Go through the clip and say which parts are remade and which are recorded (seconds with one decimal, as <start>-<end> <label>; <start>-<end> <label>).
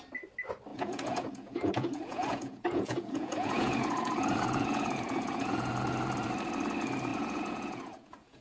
0.0-0.7 recorded; 0.7-5.7 remade; 5.7-7.1 recorded; 7.1-8.4 remade